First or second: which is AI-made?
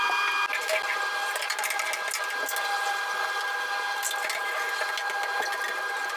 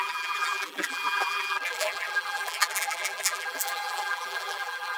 second